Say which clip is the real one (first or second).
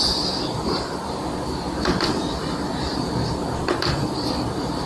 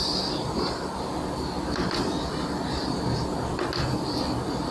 second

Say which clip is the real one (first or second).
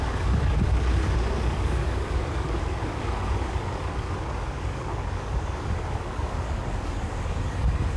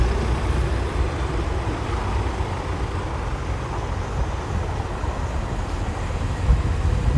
second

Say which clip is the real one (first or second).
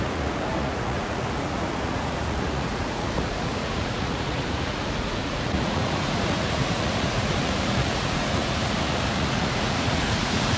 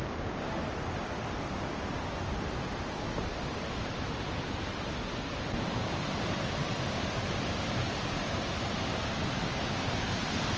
second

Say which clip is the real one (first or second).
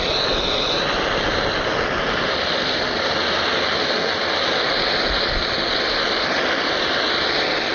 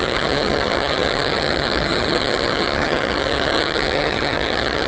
first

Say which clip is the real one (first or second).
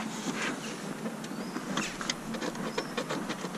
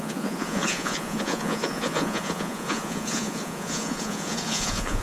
first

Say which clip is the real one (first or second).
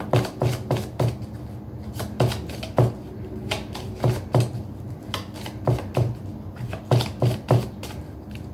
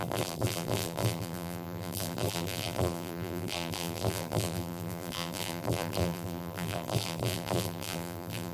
first